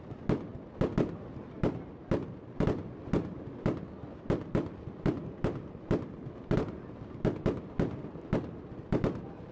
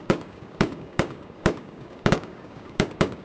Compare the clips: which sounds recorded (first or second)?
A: first